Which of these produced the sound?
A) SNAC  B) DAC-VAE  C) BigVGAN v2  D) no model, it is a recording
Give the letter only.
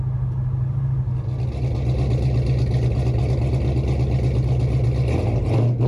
D